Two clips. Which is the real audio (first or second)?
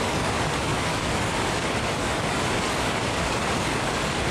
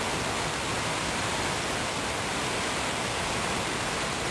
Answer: second